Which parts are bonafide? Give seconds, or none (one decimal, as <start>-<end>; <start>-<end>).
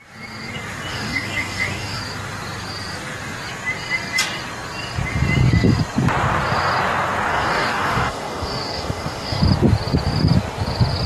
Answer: 0.0-0.9; 2.0-7.3; 9.4-11.1